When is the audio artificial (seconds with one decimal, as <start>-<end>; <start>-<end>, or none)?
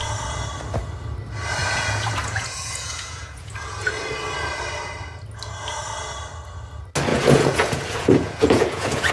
1.6-3.9; 7.1-9.1